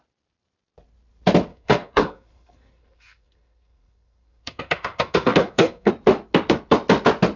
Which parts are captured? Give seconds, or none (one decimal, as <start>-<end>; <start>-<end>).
0.0-1.5; 5.9-7.4